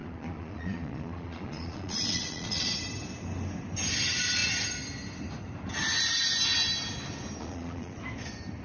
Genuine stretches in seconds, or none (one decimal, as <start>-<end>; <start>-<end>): 2.7-7.4; 8.0-8.6